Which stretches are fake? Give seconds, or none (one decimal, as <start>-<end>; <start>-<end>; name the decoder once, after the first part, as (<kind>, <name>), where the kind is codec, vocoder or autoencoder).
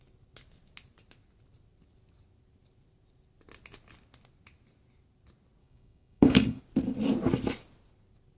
5.6-6.6 (codec, DAC)